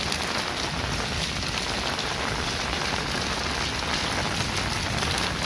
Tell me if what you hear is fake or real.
real